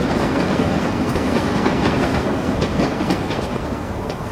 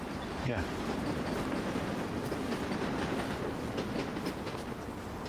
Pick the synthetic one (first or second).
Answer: first